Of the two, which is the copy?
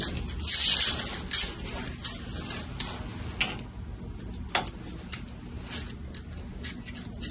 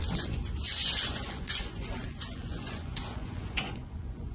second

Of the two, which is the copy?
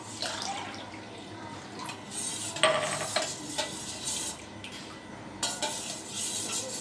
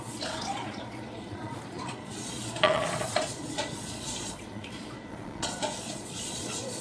second